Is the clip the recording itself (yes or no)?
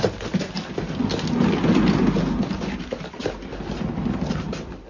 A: yes